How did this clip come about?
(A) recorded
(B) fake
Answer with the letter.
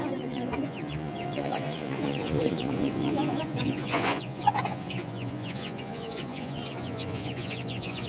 B